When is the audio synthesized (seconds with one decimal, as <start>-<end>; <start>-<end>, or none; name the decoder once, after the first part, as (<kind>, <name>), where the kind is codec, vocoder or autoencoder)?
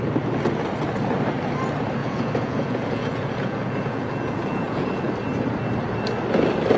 2.0-5.1 (vocoder, Vocos)